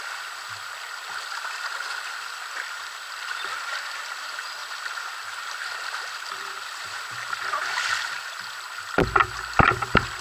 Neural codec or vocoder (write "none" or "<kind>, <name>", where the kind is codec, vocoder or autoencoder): none